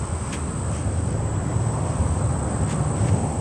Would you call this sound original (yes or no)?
yes